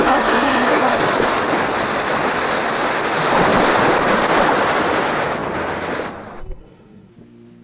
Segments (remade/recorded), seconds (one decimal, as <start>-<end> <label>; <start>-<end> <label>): 0.0-1.0 remade; 1.0-6.4 recorded; 6.4-7.1 remade; 7.1-7.6 recorded